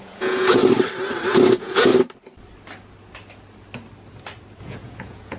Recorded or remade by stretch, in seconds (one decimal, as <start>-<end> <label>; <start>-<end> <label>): 0.0-0.6 remade; 0.6-1.3 recorded; 1.3-1.9 remade; 1.9-4.6 recorded; 4.6-5.4 remade